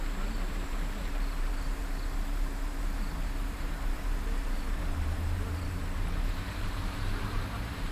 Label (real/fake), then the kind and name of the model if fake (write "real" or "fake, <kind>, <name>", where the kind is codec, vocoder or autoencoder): fake, vocoder, BigVGAN v2